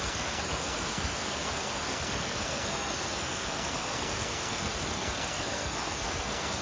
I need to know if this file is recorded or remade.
remade